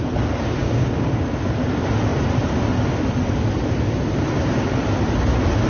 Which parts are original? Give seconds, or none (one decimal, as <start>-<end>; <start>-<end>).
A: 0.0-0.6; 1.2-5.7